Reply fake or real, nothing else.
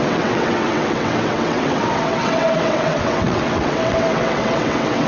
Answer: fake